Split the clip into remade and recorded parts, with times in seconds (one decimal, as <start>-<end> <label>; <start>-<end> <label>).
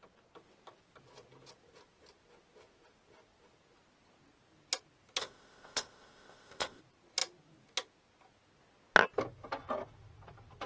0.0-5.2 recorded; 5.2-6.8 remade; 6.8-10.7 recorded